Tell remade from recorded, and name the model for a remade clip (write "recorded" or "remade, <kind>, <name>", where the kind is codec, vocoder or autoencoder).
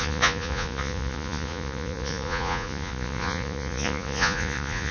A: remade, vocoder, Vocos